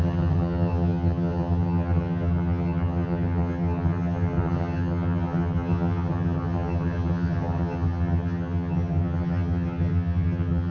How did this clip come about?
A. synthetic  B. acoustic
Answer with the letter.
A